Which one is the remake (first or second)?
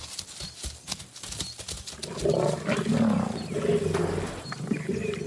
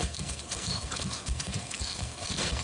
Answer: second